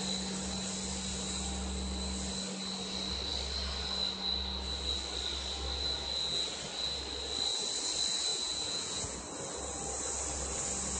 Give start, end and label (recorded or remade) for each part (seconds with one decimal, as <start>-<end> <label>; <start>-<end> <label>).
0.0-8.3 recorded; 8.3-9.2 remade; 9.2-11.0 recorded